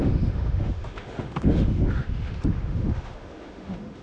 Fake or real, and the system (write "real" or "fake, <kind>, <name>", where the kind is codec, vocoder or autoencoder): fake, autoencoder, DAC-VAE